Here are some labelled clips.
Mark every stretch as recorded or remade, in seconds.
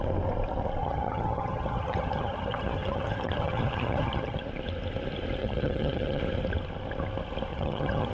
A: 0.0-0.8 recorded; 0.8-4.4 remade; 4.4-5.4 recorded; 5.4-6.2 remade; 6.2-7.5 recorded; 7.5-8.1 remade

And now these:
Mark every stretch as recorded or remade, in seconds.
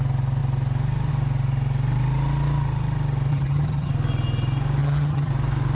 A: 0.0-3.3 recorded; 3.3-3.9 remade; 3.9-4.8 recorded; 4.8-5.3 remade; 5.3-5.7 recorded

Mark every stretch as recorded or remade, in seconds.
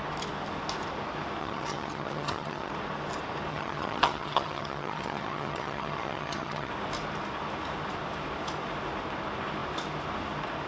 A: 0.0-1.4 recorded; 1.4-2.7 remade; 2.7-3.5 recorded; 3.5-6.7 remade; 6.7-10.7 recorded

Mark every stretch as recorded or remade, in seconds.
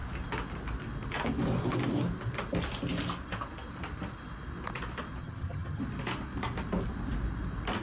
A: 0.0-5.2 recorded; 5.2-5.8 remade; 5.8-7.8 recorded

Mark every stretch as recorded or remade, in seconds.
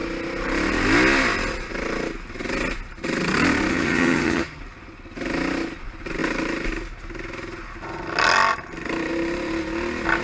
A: 0.0-3.7 recorded; 3.7-4.6 remade; 4.6-10.2 recorded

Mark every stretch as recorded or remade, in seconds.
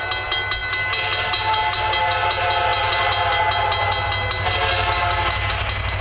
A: 0.0-6.0 recorded